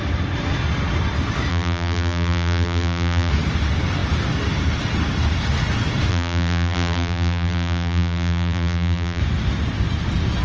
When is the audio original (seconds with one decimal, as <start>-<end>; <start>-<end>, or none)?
0.0-1.5; 3.3-6.1; 9.2-10.4